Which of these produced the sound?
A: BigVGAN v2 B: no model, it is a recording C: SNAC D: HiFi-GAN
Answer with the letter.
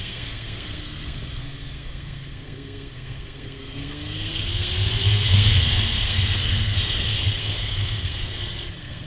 C